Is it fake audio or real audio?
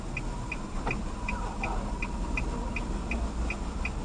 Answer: real